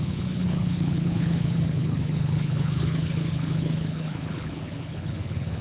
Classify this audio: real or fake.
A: fake